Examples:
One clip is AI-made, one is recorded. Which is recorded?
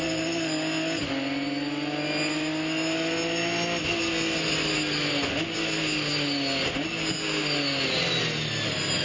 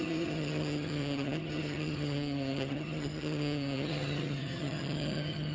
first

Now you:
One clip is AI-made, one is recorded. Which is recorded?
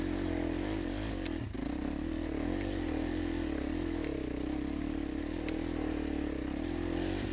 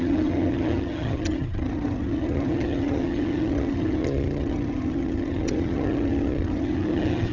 first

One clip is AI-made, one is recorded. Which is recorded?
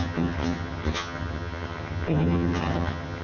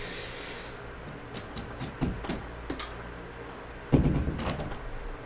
second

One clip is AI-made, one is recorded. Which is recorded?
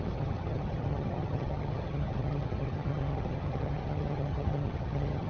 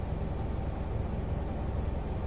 second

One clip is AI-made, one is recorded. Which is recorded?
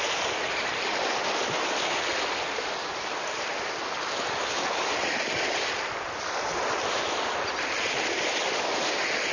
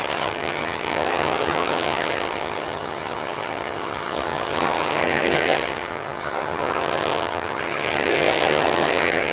first